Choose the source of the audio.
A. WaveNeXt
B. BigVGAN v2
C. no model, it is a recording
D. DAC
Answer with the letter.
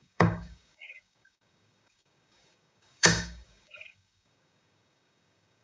D